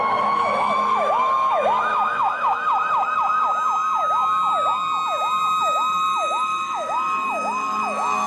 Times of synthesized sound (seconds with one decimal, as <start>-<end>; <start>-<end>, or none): 0.0-2.6; 5.6-8.3